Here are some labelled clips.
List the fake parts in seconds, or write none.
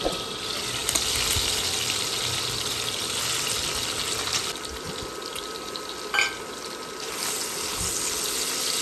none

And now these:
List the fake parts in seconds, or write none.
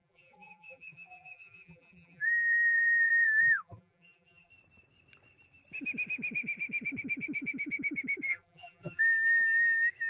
0.0-4.5 (vocoder, BigVGAN v2); 8.3-9.0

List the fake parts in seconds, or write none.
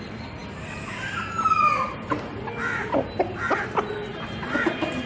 none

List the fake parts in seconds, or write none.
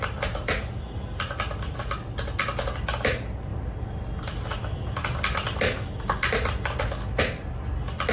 none